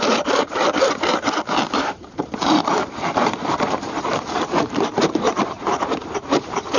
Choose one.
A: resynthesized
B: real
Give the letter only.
A